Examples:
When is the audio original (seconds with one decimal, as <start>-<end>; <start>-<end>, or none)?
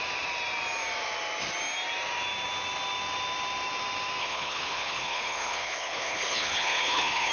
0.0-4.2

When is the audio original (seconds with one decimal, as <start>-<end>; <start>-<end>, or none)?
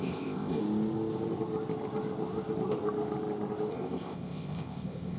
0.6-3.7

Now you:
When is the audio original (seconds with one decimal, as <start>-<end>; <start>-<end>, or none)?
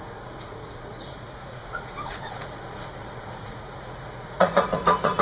none